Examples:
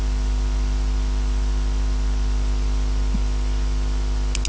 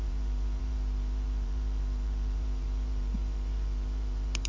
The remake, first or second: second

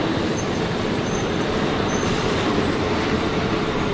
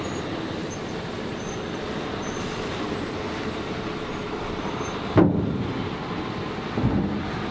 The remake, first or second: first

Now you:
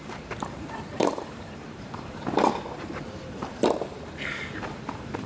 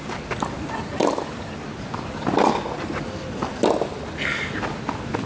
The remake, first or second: first